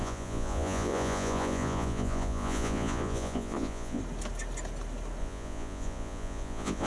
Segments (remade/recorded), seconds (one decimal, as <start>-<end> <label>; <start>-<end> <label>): 0.0-4.0 remade; 4.0-5.2 recorded; 5.2-6.9 remade